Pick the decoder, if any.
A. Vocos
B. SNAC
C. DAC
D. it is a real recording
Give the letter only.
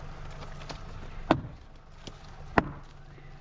D